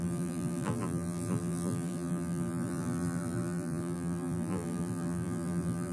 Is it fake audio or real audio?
fake